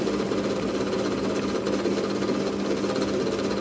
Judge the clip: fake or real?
real